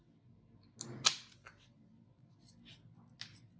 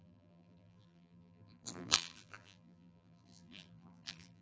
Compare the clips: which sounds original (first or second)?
first